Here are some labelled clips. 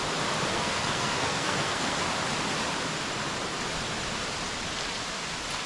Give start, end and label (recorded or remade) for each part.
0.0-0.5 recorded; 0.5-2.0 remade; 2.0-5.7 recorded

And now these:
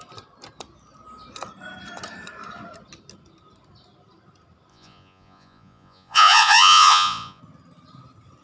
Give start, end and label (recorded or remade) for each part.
0.0-4.7 recorded; 4.7-7.4 remade; 7.4-8.4 recorded

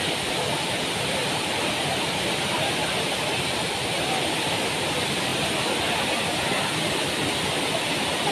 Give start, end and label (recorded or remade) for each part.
0.0-8.3 recorded

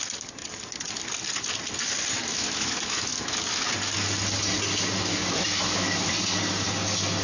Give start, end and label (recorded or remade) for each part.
0.0-2.3 recorded; 2.3-3.7 remade; 3.7-5.1 recorded; 5.1-6.1 remade; 6.1-7.2 recorded

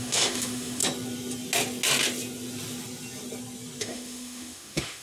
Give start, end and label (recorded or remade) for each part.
0.0-0.8 remade; 0.8-3.8 recorded; 3.8-5.0 remade

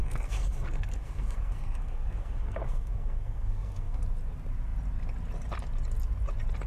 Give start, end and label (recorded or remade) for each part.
0.0-4.0 remade; 4.0-6.7 recorded

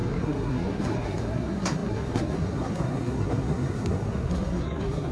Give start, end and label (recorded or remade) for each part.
0.0-5.1 remade

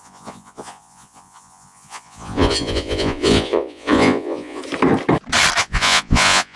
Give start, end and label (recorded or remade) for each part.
0.0-4.6 remade; 4.6-5.6 recorded; 5.6-6.6 remade